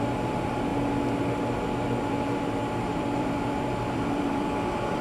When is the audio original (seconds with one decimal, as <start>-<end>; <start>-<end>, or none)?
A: 0.7-2.0